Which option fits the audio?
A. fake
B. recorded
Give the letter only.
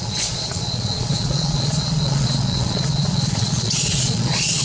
A